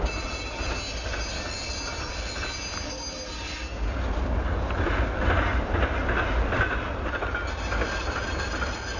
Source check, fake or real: real